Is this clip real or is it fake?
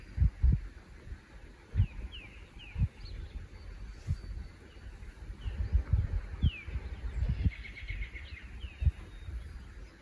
real